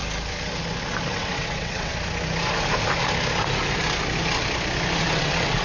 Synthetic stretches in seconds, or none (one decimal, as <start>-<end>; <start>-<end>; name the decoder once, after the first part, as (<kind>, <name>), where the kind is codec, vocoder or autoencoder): 1.1-1.9 (vocoder, WaveNeXt); 5.0-5.6